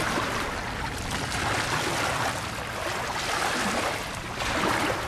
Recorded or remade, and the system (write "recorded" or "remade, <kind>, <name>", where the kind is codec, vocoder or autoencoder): recorded